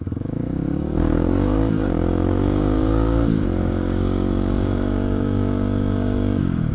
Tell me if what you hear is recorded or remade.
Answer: remade